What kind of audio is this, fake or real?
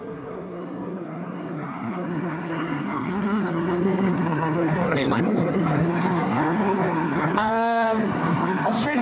fake